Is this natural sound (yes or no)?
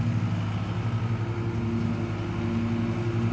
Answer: yes